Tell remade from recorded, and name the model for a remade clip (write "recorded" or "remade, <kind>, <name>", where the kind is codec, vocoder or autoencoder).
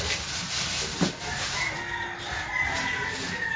recorded